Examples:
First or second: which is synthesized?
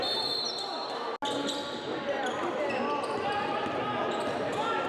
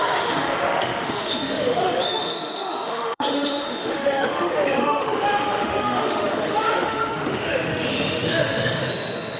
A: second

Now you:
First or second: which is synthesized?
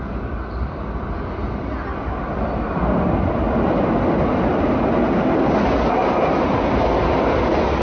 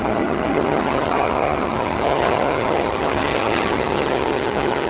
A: second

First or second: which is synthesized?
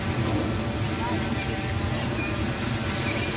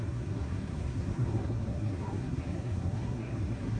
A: second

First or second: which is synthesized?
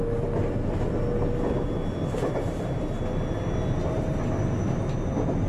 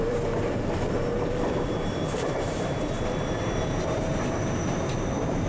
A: second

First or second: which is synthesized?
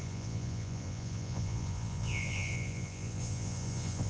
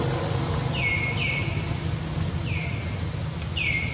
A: first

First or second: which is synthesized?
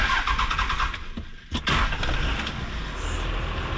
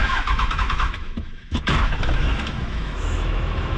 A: second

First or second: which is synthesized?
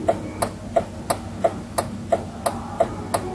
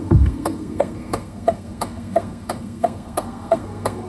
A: second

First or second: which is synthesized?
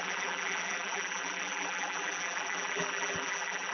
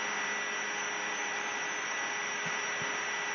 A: first